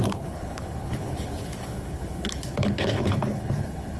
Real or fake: fake